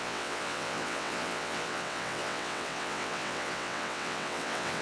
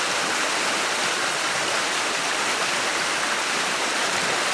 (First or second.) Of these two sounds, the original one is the second